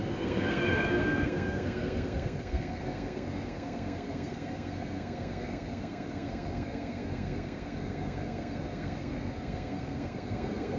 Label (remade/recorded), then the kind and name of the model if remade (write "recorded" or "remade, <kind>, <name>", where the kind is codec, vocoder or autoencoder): remade, codec, SNAC